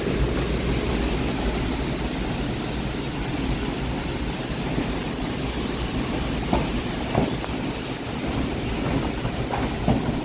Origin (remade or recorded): recorded